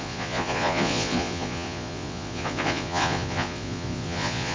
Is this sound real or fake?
fake